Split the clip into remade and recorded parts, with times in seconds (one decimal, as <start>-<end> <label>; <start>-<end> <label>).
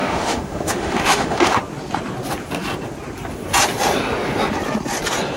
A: 0.0-1.6 remade; 1.6-5.4 recorded